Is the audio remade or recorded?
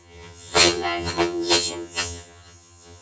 remade